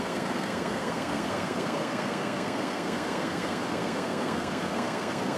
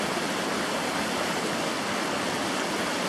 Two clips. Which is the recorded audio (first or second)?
second